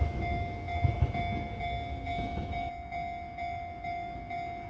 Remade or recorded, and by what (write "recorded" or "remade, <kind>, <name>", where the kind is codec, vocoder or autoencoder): remade, autoencoder, DAC-VAE